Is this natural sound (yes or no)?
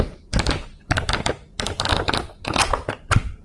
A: yes